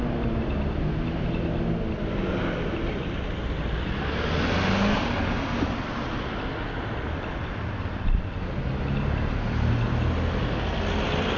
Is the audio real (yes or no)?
yes